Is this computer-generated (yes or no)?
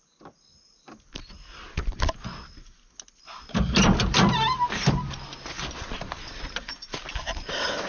no